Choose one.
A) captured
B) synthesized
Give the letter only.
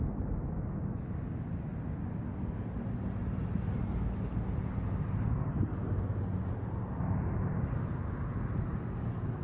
A